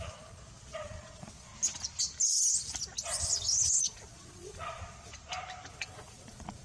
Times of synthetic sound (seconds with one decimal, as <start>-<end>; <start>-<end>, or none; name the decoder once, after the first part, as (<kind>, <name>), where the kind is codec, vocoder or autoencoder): 0.0-1.5 (vocoder, Vocos); 3.8-5.1; 5.7-6.6